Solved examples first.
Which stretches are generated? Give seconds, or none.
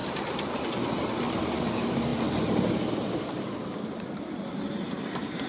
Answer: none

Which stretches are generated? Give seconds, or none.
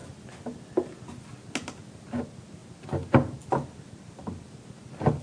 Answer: none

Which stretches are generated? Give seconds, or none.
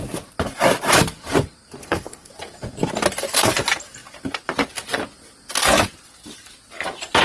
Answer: 1.8-2.3 (codec, SNAC)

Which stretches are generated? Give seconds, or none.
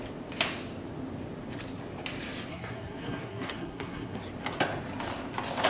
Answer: 2.5-4.2 (codec, SNAC)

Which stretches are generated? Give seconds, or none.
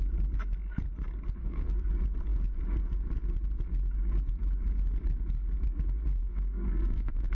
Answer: 1.4-1.9 (codec, SNAC); 6.2-7.3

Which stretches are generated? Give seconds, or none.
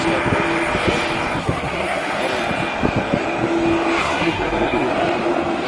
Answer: 1.4-2.2 (codec, SNAC); 4.0-4.9